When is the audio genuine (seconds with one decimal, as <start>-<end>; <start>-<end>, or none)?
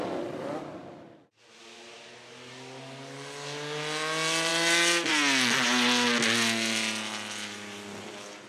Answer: 0.0-8.5